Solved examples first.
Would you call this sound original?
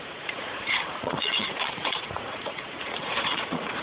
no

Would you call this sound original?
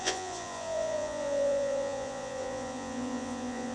no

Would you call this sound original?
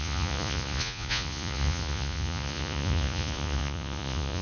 no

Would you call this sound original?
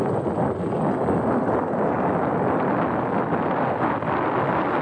yes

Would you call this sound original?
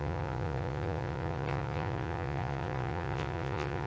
no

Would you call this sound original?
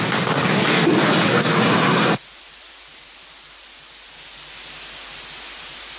yes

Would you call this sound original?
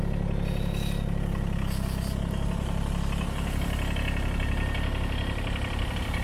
yes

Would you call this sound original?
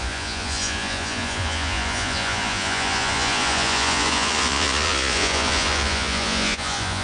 no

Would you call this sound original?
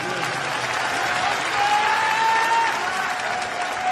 yes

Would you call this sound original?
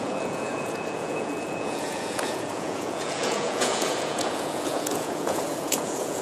no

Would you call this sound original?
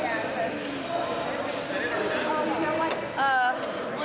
yes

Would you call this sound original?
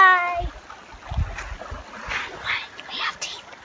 yes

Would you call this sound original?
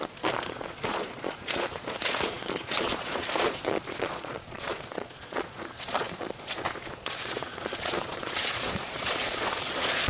no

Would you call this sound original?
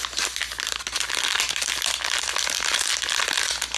yes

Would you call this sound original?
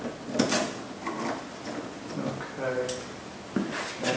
yes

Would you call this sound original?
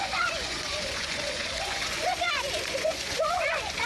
no